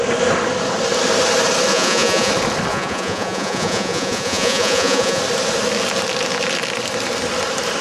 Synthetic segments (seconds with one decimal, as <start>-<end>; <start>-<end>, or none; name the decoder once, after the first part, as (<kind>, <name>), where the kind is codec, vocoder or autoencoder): 1.7-2.3 (vocoder, Vocos); 2.7-5.2